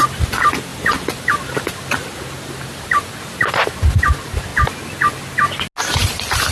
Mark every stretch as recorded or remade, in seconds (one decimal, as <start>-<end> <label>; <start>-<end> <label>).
0.0-6.5 recorded